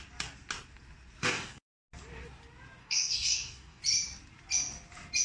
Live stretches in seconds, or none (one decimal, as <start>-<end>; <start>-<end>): 0.0-1.2; 1.8-2.8; 3.8-5.2